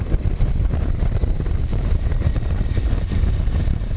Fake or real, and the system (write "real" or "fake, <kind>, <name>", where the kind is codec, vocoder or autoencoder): fake, vocoder, BigVGAN v2